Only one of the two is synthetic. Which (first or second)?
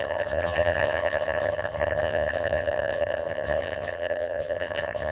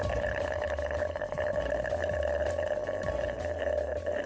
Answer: first